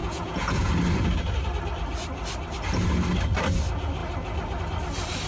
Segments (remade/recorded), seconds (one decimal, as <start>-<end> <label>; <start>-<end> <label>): 0.0-0.7 remade; 0.7-5.3 recorded